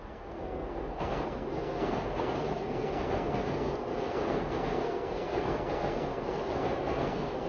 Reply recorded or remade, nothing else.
remade